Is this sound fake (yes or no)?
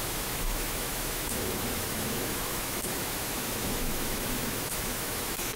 yes